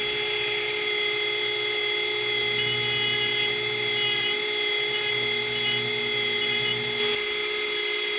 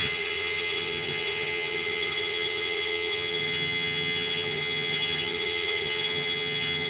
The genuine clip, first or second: first